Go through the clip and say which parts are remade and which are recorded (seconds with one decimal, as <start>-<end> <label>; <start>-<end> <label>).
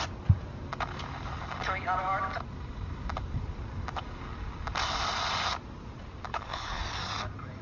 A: 0.0-6.3 recorded; 6.3-6.8 remade; 6.8-7.6 recorded